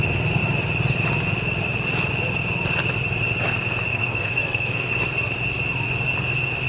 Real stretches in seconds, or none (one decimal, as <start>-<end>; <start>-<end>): 0.0-3.9; 4.9-6.7